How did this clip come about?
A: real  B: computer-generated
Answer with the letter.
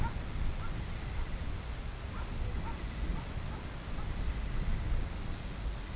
A